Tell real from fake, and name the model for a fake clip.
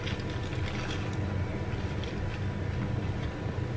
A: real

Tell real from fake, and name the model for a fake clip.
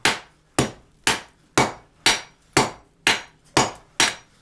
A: real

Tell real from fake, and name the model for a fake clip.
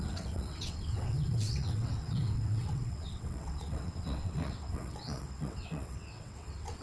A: fake, vocoder, WaveNeXt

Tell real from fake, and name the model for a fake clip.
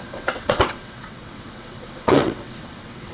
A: fake, vocoder, WaveNeXt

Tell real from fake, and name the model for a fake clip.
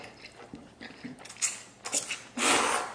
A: real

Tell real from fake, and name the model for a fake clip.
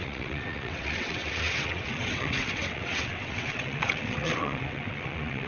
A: fake, vocoder, WaveNeXt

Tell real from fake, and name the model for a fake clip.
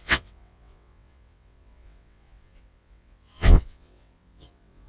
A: fake, vocoder, WaveNeXt